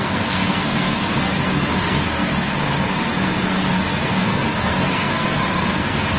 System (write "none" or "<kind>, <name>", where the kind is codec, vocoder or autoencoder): codec, SNAC